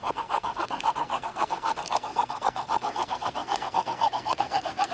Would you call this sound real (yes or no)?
no